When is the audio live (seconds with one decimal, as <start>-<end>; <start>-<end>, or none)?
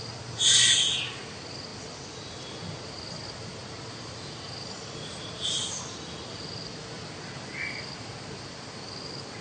0.0-9.4